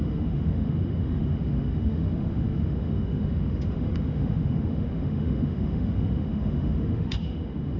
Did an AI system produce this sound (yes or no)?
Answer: yes